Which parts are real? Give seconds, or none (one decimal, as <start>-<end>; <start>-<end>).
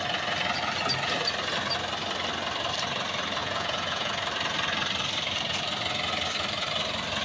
0.0-3.4; 4.1-7.2